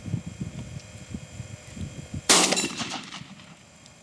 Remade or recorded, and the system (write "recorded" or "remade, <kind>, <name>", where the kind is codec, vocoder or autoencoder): remade, vocoder, BigVGAN v2